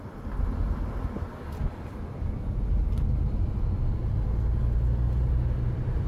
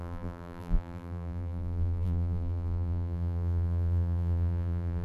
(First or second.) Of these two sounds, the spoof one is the second